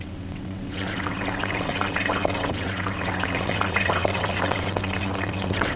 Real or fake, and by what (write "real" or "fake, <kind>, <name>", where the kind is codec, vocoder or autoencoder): fake, vocoder, WaveNeXt